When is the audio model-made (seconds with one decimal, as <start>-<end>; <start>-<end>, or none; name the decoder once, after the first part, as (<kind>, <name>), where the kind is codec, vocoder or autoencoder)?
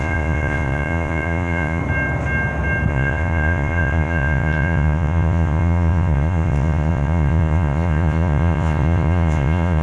0.0-1.8 (vocoder, Vocos); 2.9-9.8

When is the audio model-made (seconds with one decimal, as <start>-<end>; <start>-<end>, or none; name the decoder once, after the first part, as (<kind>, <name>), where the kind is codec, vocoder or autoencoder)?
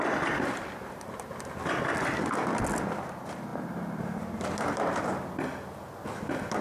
none